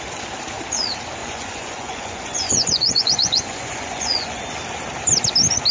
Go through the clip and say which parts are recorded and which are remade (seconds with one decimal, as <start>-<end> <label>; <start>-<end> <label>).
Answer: 0.0-1.2 recorded; 1.2-4.4 remade; 4.4-5.7 recorded